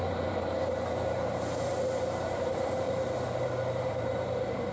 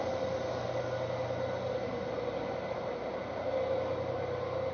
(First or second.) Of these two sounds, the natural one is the second